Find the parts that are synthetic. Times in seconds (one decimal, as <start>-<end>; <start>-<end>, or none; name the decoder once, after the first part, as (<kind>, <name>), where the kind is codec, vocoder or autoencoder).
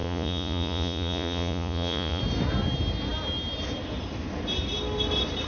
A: 0.0-2.2 (vocoder, Vocos)